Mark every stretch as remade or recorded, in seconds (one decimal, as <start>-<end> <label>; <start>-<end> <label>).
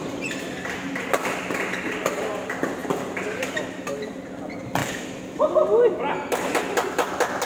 0.0-7.5 recorded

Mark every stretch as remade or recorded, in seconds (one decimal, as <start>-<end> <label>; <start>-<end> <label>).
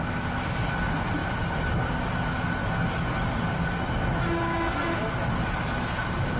0.0-6.4 recorded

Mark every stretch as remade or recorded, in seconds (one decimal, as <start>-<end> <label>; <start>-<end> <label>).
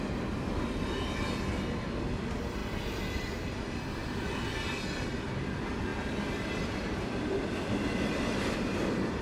0.0-5.9 recorded; 5.9-9.2 remade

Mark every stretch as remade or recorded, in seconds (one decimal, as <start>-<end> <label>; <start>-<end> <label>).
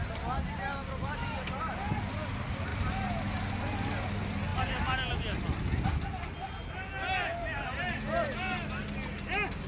0.0-9.7 recorded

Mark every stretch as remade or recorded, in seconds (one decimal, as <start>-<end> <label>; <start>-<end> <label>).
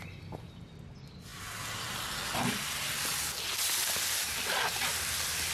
0.0-5.5 recorded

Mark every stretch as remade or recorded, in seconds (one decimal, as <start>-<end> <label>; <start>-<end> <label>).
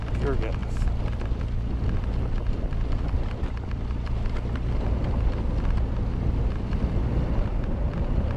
0.0-8.4 recorded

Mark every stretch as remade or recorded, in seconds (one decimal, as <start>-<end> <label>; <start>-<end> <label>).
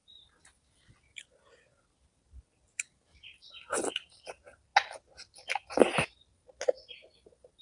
0.0-4.3 remade; 4.3-7.6 recorded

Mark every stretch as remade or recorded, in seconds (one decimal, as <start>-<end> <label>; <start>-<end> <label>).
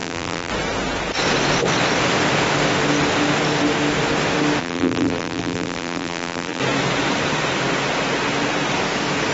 0.0-0.5 remade; 0.5-4.6 recorded; 4.6-6.6 remade; 6.6-9.3 recorded